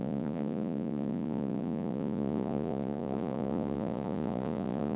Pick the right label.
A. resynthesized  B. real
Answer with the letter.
A